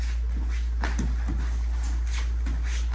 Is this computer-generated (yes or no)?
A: no